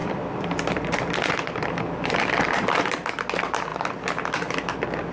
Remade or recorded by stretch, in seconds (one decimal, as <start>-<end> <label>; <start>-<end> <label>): 0.0-3.1 remade; 3.1-5.1 recorded